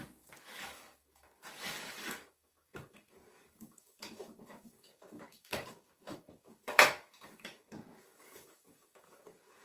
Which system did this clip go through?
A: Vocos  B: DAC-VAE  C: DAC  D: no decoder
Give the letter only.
C